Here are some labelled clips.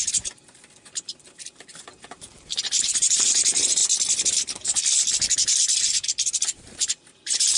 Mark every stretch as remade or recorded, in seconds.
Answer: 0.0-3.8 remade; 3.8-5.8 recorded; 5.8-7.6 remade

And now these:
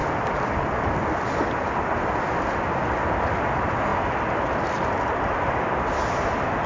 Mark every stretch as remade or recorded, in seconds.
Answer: 0.0-6.7 remade

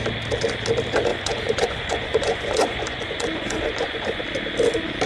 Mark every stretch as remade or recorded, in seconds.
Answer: 0.0-1.1 recorded; 1.1-4.2 remade; 4.2-5.1 recorded